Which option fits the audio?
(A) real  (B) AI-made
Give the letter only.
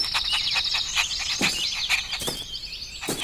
A